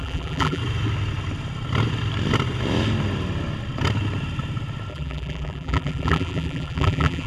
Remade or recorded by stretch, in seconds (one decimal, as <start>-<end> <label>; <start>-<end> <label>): 0.0-0.6 remade; 0.6-4.9 recorded; 4.9-7.3 remade